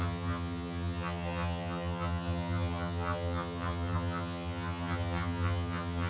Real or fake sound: fake